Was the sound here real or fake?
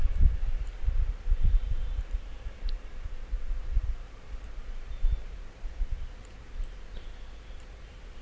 fake